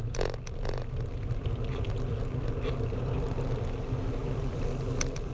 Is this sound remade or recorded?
recorded